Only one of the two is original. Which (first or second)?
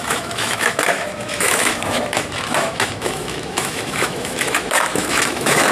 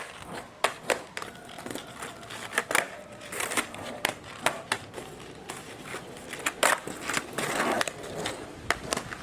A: second